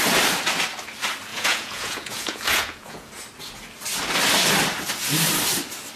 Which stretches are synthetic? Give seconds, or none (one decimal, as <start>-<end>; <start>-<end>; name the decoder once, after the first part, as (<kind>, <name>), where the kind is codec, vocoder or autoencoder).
1.3-3.1 (vocoder, Vocos)